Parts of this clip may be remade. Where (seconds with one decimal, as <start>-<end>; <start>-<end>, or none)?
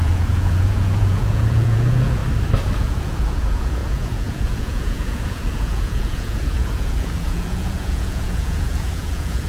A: 0.0-2.2; 2.8-9.5